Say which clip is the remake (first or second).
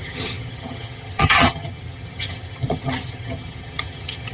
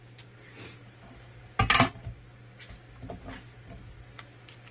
first